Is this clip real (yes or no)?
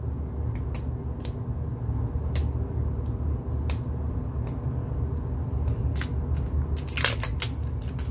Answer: yes